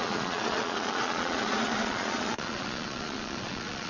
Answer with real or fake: fake